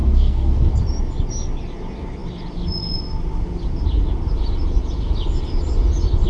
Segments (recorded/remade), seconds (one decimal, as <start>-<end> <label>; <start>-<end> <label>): 0.0-0.7 remade; 0.7-6.3 recorded